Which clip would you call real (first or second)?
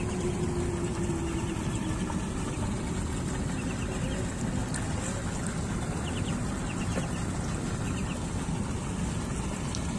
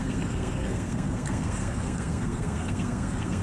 first